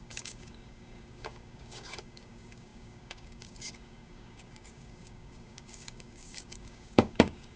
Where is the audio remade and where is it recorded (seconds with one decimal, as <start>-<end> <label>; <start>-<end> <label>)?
0.0-7.6 remade